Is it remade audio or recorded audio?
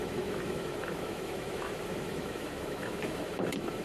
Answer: remade